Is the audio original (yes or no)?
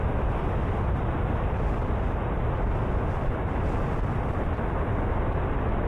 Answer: yes